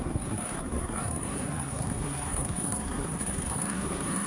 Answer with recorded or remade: remade